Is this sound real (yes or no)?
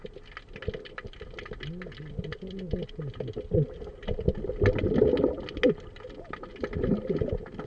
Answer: yes